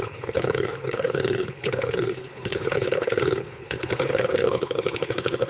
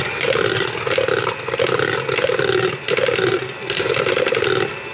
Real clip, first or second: second